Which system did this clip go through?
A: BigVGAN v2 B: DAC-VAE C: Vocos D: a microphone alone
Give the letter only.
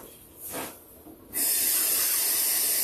D